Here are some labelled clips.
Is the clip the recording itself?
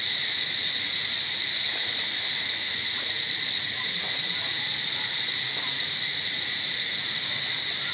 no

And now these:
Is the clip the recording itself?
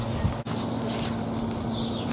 yes